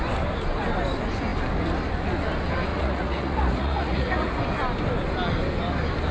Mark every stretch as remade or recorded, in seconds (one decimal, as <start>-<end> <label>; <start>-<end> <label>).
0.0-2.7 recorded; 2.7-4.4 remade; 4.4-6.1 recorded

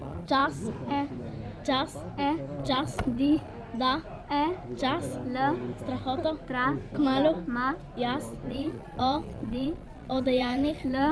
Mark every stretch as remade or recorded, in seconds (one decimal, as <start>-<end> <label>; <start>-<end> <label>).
0.0-0.4 remade; 0.4-2.6 recorded; 2.6-3.5 remade; 3.5-8.5 recorded; 8.5-11.1 remade

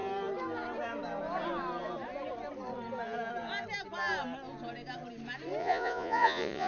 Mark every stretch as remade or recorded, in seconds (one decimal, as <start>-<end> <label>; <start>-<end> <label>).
0.0-5.6 recorded; 5.6-6.7 remade